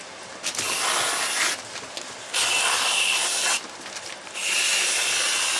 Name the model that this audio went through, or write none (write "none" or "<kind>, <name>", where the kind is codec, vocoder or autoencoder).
none